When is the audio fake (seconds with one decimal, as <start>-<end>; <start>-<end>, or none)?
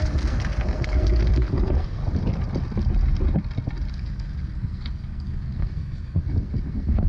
0.0-2.0; 3.9-7.1